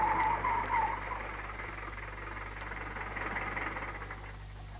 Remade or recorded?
recorded